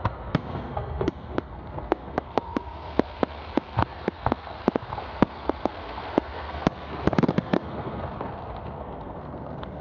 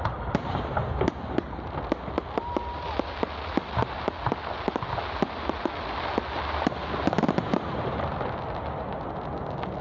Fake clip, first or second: first